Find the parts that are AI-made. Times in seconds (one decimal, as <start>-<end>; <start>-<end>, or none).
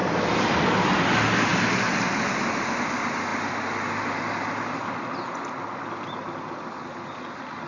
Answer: none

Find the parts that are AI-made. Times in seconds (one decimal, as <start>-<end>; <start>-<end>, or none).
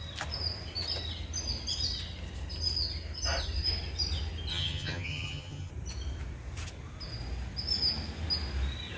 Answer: 4.5-5.7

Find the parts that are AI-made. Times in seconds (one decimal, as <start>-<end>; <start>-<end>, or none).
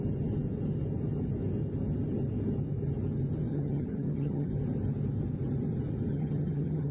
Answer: 3.5-4.5; 6.1-6.9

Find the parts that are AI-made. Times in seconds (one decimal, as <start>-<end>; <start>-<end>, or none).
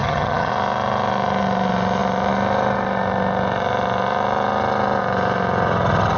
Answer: 0.0-0.5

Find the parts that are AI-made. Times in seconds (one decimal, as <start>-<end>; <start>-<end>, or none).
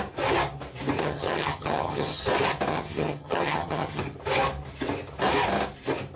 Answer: 1.0-2.2; 2.7-4.0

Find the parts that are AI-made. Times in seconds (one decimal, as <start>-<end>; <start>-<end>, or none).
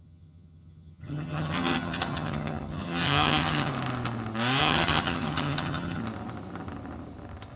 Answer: 0.0-3.7; 4.6-6.0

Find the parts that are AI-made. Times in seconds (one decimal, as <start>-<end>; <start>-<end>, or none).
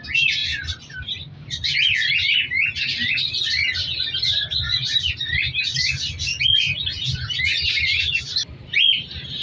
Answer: none